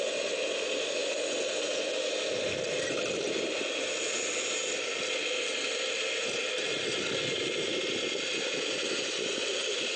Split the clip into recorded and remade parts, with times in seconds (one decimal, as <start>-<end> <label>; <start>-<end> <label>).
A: 0.0-10.0 recorded